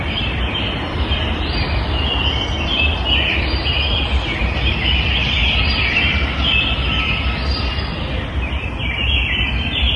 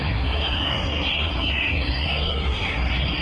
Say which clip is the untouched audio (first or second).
first